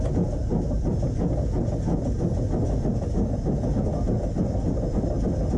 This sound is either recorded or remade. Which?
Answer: recorded